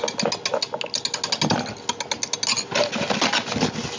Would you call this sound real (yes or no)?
yes